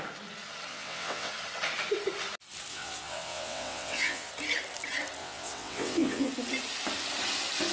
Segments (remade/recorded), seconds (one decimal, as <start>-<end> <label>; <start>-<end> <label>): 0.0-0.7 recorded; 0.7-1.3 remade; 1.3-2.7 recorded; 2.7-4.3 remade; 4.3-5.2 recorded; 5.2-6.3 remade; 6.3-7.7 recorded

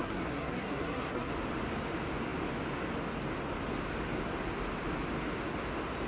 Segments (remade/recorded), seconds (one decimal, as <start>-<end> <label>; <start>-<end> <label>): 0.0-1.3 remade; 1.3-6.1 recorded

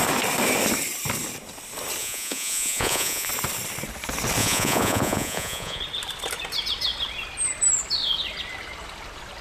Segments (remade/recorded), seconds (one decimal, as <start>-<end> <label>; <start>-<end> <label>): 0.0-2.0 recorded; 2.0-3.3 remade; 3.3-4.4 recorded; 4.4-5.8 remade; 5.8-9.4 recorded

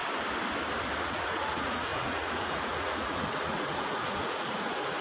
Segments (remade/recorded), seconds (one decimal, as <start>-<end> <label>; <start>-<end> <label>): 0.0-1.0 recorded; 1.0-5.0 remade

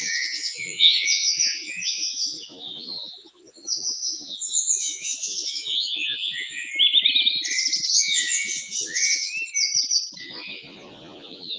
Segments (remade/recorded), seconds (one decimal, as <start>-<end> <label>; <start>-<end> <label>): 0.0-6.7 remade; 6.7-7.9 recorded; 7.9-9.3 remade; 9.3-10.2 recorded; 10.2-11.6 remade